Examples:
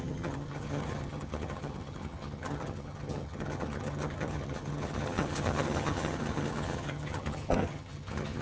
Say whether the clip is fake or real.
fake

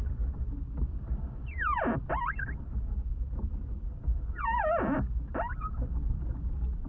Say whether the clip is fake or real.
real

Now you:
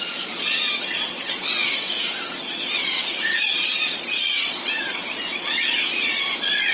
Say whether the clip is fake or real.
fake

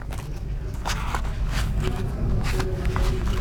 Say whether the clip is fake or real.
fake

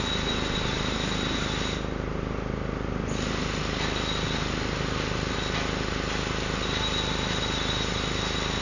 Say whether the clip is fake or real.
real